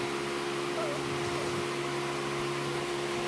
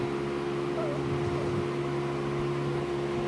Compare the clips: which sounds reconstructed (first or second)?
first